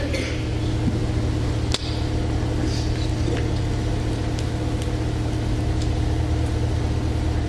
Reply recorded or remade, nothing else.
recorded